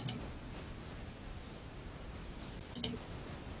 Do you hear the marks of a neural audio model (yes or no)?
no